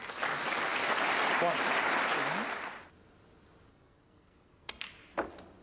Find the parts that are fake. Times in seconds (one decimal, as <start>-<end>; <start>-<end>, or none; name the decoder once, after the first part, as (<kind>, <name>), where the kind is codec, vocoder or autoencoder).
3.7-4.7 (codec, SNAC)